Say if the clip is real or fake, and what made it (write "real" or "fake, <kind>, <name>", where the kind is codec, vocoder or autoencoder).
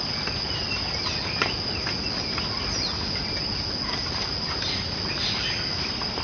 real